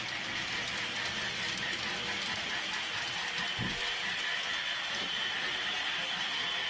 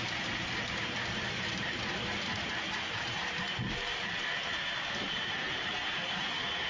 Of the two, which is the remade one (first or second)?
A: second